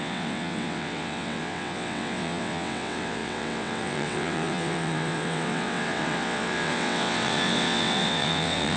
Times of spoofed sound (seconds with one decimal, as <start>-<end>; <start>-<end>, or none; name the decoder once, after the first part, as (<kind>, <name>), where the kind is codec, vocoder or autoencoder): 0.0-8.8 (vocoder, WaveNeXt)